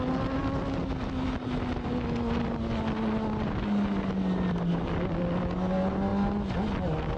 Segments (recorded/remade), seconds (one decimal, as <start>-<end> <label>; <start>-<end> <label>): 0.0-7.2 recorded